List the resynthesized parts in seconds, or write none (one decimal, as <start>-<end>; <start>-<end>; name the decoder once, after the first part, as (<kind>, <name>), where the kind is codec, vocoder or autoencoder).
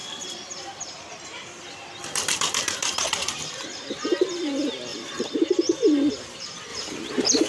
0.0-4.5 (vocoder, BigVGAN v2); 4.9-6.1; 6.7-7.5